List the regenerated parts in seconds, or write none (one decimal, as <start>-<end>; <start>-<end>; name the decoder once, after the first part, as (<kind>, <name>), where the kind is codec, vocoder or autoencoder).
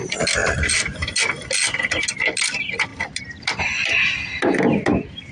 none